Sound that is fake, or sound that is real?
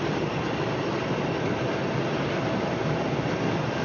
fake